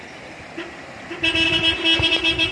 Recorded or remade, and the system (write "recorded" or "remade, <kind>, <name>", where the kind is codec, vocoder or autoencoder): recorded